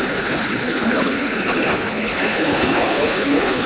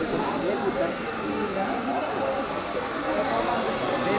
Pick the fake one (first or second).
first